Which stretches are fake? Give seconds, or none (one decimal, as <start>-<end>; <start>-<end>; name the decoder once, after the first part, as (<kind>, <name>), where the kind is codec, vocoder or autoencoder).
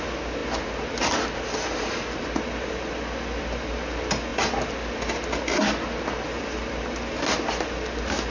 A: none